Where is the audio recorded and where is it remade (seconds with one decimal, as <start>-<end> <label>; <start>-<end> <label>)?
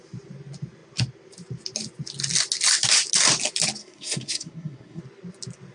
0.0-3.8 recorded; 3.8-5.0 remade; 5.0-5.7 recorded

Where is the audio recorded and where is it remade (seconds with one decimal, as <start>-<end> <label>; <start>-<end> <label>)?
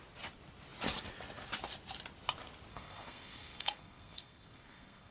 0.0-2.7 recorded; 2.7-5.1 remade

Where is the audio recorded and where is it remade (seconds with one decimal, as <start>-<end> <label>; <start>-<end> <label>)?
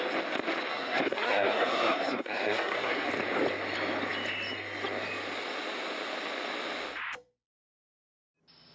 0.0-0.7 recorded; 0.7-3.1 remade; 3.1-8.7 recorded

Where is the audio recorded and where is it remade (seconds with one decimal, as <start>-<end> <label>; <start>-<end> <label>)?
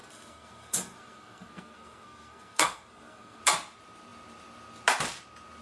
0.0-3.4 remade; 3.4-5.6 recorded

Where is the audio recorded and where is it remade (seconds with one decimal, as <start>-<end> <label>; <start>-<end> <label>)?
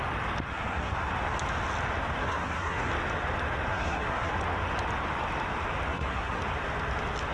0.0-0.5 recorded; 0.5-1.1 remade; 1.1-2.2 recorded; 2.2-2.9 remade; 2.9-3.7 recorded; 3.7-4.3 remade; 4.3-5.9 recorded; 5.9-6.4 remade; 6.4-7.3 recorded